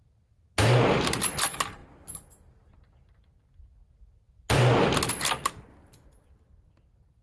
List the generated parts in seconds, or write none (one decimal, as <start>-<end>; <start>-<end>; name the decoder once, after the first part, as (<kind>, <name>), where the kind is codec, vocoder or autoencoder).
none